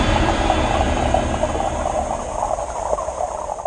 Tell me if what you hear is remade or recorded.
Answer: remade